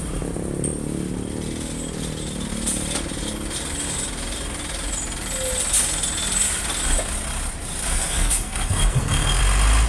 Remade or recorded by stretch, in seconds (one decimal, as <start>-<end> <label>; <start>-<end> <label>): 0.0-7.9 recorded; 7.9-9.4 remade; 9.4-9.9 recorded